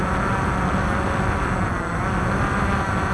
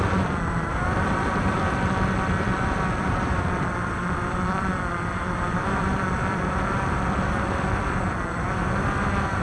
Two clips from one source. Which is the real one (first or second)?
first